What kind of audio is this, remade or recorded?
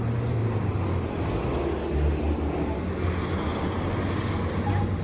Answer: recorded